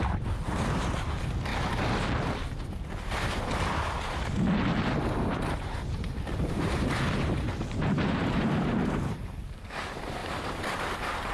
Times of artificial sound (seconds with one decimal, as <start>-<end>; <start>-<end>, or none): 0.0-1.5; 5.0-11.3